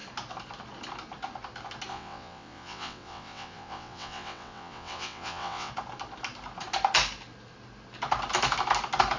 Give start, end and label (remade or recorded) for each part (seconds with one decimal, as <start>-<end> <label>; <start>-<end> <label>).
0.0-1.9 recorded; 1.9-5.7 remade; 5.7-9.2 recorded